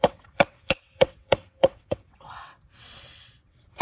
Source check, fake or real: fake